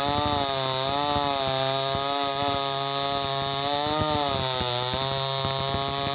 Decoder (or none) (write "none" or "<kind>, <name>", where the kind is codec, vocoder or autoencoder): none